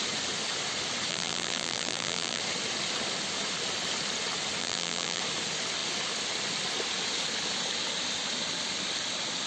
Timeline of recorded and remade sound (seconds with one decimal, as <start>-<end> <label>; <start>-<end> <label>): 0.0-1.1 recorded; 1.1-2.4 remade; 2.4-4.6 recorded; 4.6-5.2 remade; 5.2-9.5 recorded